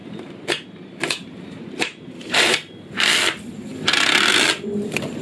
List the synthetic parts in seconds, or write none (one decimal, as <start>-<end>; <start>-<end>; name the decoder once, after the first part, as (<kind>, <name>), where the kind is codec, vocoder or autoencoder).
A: 0.0-3.1 (vocoder, BigVGAN v2)